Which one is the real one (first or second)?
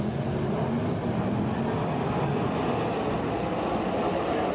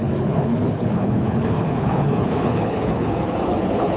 first